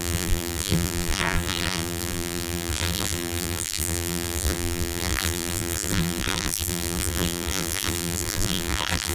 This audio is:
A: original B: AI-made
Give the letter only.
B